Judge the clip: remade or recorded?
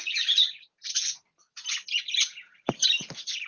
recorded